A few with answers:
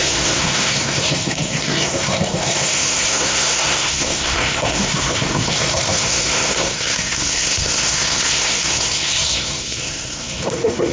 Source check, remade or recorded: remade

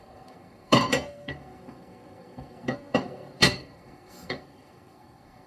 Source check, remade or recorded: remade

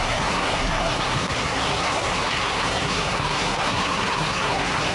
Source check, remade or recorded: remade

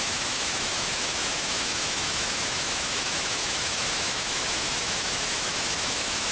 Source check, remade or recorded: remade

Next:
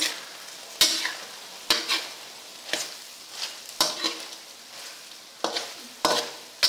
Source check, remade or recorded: recorded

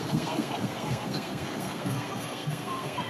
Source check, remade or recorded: remade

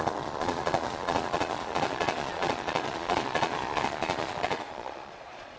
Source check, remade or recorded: remade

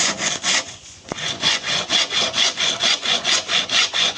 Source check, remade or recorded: remade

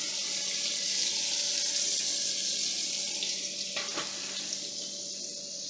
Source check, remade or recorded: recorded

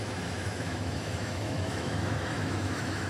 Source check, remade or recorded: remade